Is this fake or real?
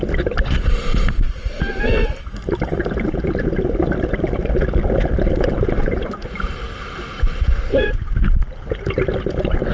real